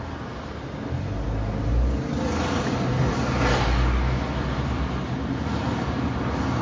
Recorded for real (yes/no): yes